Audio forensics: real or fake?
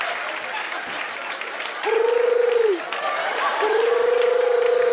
real